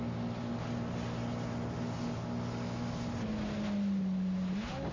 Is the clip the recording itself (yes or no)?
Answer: yes